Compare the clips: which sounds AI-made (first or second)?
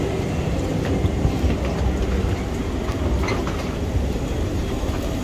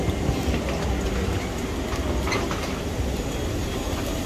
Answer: first